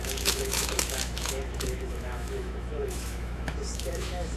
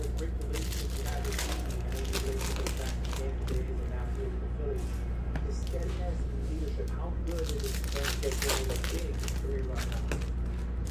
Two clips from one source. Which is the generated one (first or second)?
first